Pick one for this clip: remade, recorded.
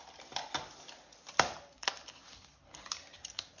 recorded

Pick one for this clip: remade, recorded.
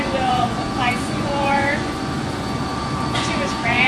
remade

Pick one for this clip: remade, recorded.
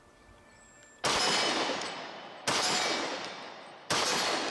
recorded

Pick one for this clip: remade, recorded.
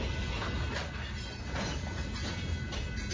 recorded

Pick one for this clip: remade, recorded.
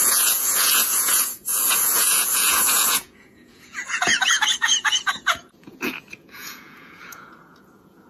remade